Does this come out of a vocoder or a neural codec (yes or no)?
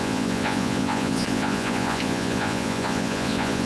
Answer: yes